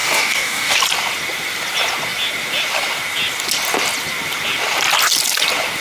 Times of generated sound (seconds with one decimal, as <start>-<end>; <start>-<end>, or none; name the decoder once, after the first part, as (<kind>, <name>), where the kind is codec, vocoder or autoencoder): 0.0-0.8 (codec, DAC)